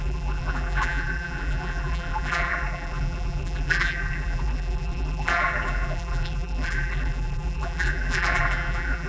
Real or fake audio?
fake